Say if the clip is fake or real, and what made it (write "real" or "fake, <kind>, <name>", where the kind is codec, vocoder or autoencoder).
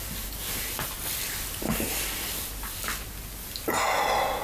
real